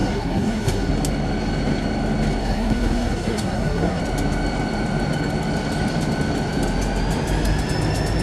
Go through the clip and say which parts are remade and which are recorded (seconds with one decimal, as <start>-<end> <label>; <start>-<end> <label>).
0.0-0.9 remade; 0.9-2.4 recorded; 2.4-4.0 remade; 4.0-8.2 recorded